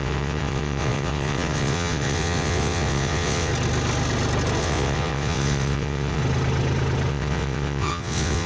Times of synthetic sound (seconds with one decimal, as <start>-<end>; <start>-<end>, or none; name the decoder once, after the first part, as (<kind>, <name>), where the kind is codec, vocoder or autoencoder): 0.0-3.5 (vocoder, WaveNeXt); 4.6-6.2; 7.1-8.5